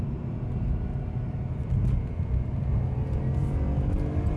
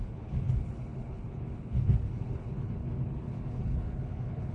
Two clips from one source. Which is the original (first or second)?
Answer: first